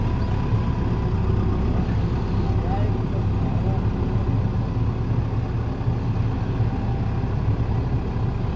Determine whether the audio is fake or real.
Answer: real